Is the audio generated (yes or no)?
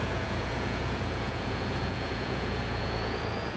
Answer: yes